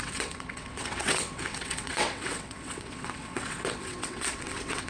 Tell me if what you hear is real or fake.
fake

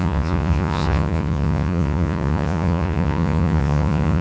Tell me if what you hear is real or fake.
fake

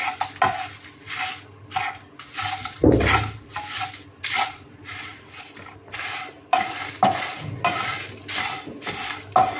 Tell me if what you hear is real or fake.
real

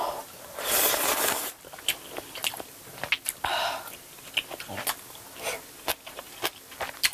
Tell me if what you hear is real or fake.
real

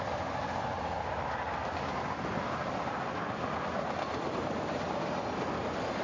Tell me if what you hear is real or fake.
real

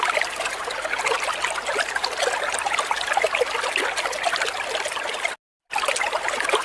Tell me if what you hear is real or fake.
real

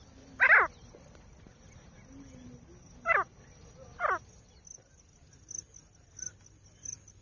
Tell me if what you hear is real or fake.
real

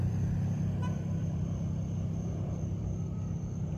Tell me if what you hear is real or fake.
fake